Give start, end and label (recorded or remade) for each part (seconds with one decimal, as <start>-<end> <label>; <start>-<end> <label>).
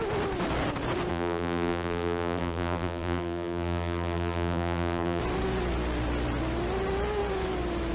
0.0-1.1 recorded; 1.1-5.2 remade; 5.2-7.9 recorded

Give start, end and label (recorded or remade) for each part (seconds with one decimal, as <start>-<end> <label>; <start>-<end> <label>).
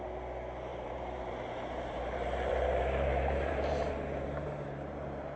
0.0-0.7 recorded; 0.7-3.9 remade; 3.9-5.4 recorded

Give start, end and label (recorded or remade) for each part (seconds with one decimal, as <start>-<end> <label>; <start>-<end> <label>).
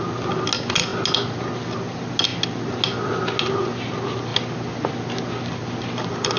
0.0-6.4 recorded